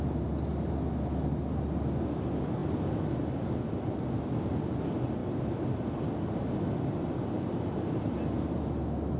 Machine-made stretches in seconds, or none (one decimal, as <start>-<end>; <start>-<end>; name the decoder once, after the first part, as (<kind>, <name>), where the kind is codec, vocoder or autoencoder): none